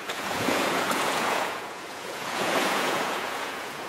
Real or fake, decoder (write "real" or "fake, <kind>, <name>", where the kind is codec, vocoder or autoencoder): fake, vocoder, Vocos